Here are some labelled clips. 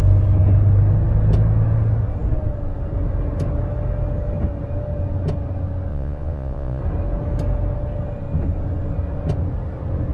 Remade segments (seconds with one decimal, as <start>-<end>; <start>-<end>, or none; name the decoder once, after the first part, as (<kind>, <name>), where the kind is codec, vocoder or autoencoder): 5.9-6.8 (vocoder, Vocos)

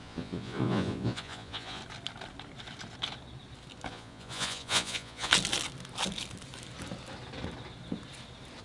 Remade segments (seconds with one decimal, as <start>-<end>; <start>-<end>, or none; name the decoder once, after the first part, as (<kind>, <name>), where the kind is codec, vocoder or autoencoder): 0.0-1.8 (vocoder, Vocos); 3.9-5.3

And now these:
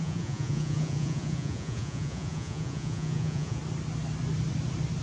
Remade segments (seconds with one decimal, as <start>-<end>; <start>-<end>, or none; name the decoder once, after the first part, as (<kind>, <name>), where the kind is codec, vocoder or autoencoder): 0.0-3.6 (vocoder, Vocos)

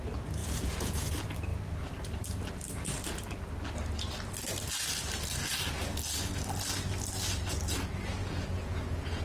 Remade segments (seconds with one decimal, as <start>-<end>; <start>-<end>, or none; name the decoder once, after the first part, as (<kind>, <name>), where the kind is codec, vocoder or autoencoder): 0.4-1.1 (vocoder, Vocos); 8.2-9.2

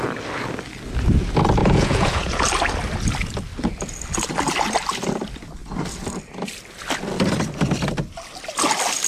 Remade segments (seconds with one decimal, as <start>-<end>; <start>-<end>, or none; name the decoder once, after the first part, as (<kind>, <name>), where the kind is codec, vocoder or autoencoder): 1.6-2.4 (vocoder, Vocos)

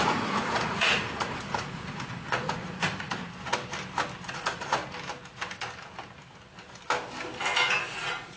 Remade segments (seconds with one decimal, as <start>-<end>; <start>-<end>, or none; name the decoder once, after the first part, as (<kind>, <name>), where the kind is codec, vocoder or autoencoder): 0.0-3.2 (vocoder, Vocos); 4.3-4.8; 7.9-8.4